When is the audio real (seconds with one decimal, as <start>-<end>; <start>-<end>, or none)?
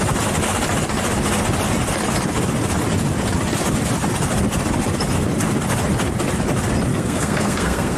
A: 0.0-6.9